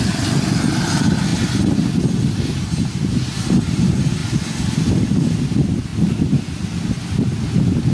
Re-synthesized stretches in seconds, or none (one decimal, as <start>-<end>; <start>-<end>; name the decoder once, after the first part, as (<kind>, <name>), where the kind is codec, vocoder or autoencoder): none